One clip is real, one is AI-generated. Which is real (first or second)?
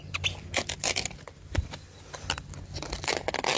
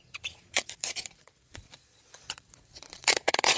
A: first